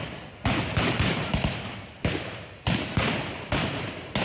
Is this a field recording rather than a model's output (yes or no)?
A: yes